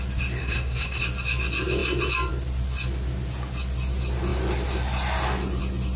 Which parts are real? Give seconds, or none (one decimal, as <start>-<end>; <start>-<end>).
0.0-0.4; 1.0-6.0